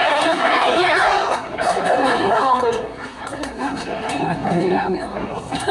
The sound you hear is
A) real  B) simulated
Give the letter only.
B